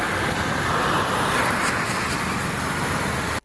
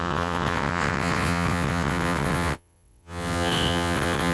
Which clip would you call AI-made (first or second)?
second